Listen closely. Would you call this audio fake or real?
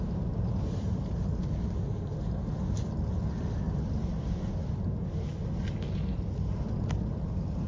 real